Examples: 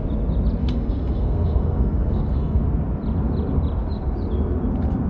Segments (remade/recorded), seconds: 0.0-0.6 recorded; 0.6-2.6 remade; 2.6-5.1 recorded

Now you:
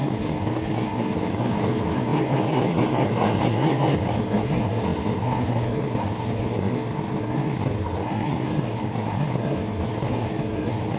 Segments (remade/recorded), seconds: 0.0-11.0 remade